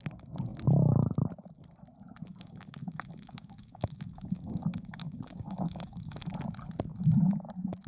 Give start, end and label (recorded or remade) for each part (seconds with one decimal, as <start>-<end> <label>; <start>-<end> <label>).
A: 0.0-2.3 recorded; 2.3-6.3 remade; 6.3-7.9 recorded